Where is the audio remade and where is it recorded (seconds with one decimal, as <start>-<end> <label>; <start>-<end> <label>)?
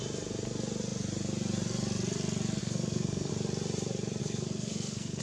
0.0-2.6 recorded; 2.6-3.3 remade; 3.3-4.2 recorded; 4.2-5.2 remade